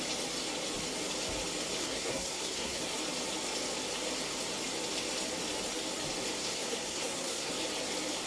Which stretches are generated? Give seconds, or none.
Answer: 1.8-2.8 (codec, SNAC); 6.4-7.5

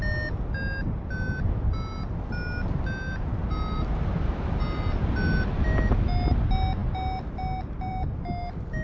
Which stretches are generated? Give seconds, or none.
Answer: none

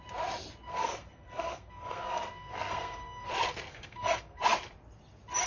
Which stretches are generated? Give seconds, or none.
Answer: 0.7-3.3 (codec, SNAC); 3.7-4.4

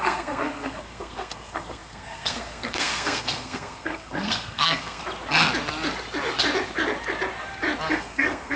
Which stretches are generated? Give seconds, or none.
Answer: 0.0-5.0 (codec, SNAC); 7.9-8.6

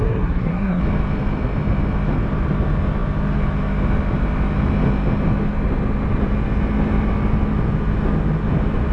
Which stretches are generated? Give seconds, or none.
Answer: 0.0-0.8 (codec, SNAC)

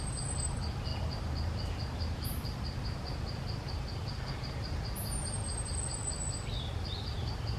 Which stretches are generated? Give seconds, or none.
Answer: none